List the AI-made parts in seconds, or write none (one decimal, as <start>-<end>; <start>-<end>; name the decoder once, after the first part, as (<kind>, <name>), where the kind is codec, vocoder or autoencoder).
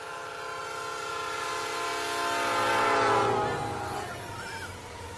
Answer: 0.0-0.6 (vocoder, BigVGAN v2); 1.1-1.9